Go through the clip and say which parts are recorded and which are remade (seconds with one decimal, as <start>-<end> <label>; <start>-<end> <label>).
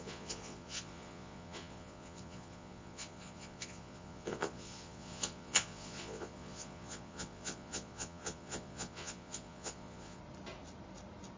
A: 0.0-10.2 remade; 10.2-11.4 recorded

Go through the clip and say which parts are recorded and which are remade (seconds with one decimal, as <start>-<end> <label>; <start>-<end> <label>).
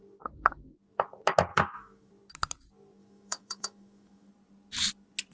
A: 0.0-1.5 recorded; 1.5-2.1 remade; 2.1-3.0 recorded; 3.0-4.3 remade; 4.3-5.3 recorded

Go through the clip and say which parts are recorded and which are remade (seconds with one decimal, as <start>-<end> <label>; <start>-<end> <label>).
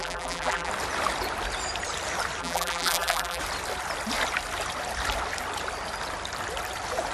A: 0.0-0.7 remade; 0.7-2.4 recorded; 2.4-3.4 remade; 3.4-7.1 recorded